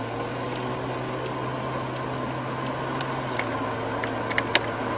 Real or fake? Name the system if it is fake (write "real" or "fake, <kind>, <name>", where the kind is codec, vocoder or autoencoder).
real